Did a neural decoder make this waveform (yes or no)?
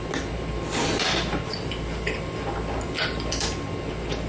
no